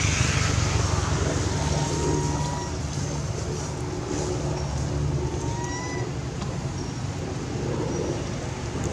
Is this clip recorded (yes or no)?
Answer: yes